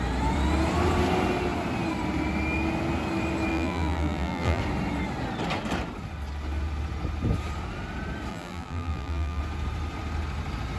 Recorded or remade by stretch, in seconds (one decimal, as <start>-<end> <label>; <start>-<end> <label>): 0.0-3.5 recorded; 3.5-4.6 remade; 4.6-8.3 recorded; 8.3-9.4 remade; 9.4-10.8 recorded